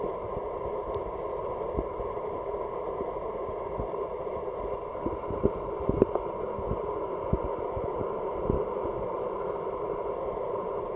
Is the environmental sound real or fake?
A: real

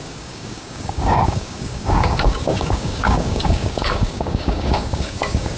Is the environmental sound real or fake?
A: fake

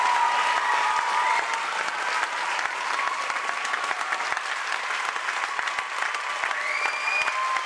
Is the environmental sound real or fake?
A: real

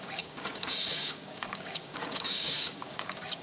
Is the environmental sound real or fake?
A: fake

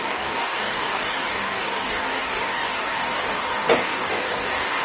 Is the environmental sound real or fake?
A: fake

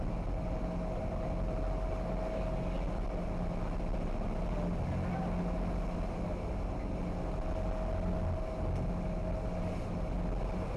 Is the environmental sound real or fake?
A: real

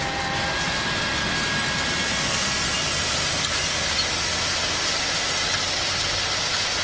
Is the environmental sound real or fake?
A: real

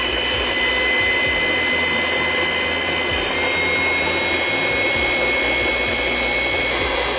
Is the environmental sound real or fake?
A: real